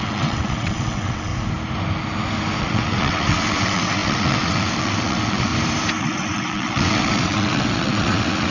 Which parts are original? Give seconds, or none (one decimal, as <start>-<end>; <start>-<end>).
1.3-2.6; 5.5-6.0